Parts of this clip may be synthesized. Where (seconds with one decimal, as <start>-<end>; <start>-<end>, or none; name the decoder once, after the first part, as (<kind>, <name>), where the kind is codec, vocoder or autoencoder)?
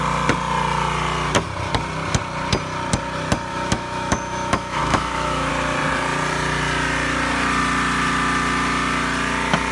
3.5-5.5 (autoencoder, DAC-VAE)